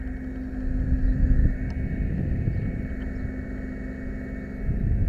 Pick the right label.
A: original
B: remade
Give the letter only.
A